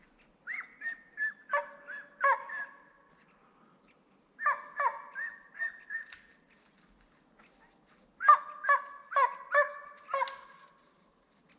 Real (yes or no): yes